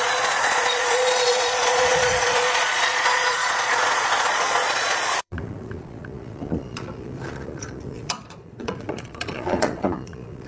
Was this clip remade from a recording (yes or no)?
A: yes